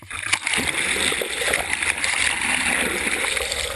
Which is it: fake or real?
real